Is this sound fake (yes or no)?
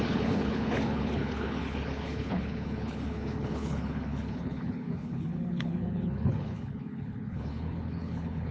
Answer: yes